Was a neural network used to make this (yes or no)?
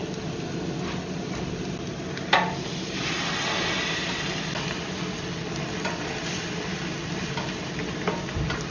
no